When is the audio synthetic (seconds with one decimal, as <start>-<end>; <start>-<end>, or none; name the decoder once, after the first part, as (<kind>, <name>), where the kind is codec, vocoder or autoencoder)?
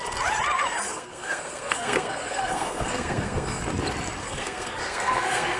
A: 0.9-3.6 (codec, SNAC); 4.2-5.6